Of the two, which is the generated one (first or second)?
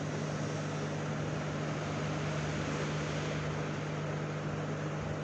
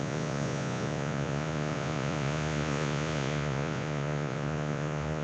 second